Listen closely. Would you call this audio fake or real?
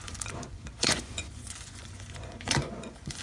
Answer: fake